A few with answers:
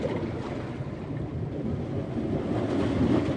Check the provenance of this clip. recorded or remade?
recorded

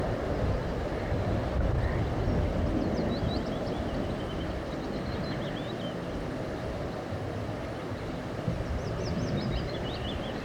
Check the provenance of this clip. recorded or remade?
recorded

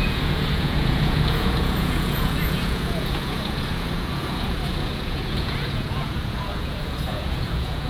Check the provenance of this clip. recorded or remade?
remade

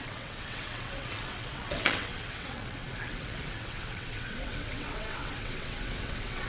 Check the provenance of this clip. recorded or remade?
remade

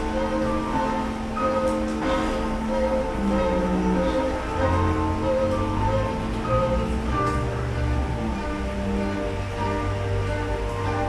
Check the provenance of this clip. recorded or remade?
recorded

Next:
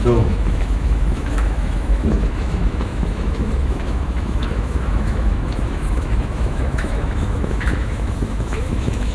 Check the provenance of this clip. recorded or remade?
remade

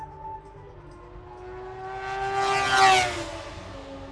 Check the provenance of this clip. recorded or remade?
recorded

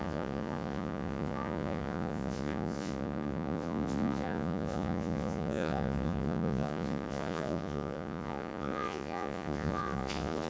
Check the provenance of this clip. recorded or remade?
remade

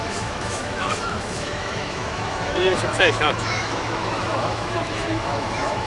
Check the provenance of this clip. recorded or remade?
remade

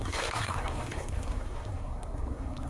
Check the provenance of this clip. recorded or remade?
remade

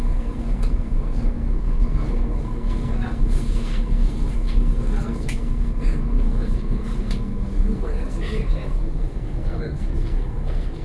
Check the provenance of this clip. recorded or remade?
remade